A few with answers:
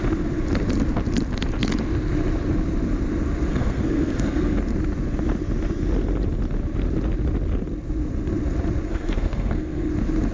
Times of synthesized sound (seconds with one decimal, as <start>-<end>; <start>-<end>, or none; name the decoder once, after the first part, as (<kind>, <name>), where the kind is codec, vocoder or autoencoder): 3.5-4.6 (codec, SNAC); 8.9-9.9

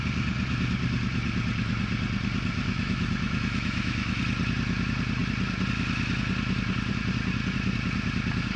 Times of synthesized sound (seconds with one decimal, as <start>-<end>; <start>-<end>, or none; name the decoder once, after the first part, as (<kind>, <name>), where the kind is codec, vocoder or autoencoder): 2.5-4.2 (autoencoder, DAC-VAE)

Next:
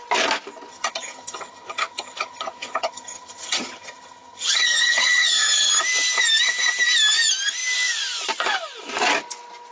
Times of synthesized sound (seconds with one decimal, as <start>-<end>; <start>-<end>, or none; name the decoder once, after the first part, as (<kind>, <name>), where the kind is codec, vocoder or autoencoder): 0.7-5.7 (vocoder, HiFi-GAN)

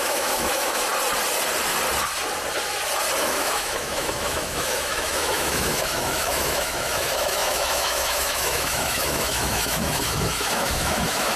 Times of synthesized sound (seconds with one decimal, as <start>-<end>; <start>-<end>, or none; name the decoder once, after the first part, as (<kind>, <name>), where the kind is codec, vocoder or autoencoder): 0.0-0.9 (autoencoder, DAC-VAE); 3.2-11.4

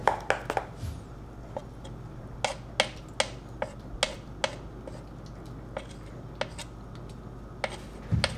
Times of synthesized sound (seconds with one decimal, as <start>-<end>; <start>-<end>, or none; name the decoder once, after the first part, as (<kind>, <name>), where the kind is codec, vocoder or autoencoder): none

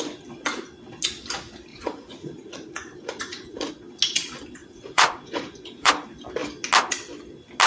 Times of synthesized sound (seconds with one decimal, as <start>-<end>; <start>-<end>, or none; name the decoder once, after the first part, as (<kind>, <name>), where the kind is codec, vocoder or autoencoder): 1.7-3.7 (vocoder, Vocos); 4.6-5.9

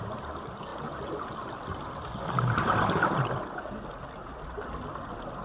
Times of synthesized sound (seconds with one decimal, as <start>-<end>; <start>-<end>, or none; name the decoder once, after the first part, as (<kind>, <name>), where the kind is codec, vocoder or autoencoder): none

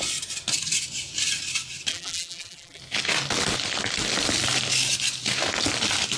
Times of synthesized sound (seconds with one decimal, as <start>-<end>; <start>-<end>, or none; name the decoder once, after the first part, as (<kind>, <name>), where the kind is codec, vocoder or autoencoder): 1.9-2.8 (vocoder, BigVGAN v2)